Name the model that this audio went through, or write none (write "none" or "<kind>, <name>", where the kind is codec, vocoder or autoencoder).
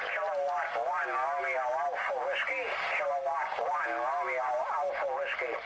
none